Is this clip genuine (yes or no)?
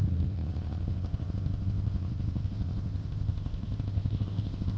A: no